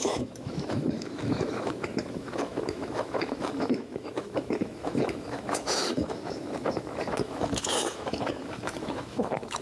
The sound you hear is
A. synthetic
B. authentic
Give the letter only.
A